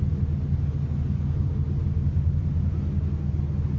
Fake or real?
real